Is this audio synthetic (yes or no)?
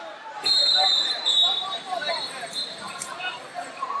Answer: yes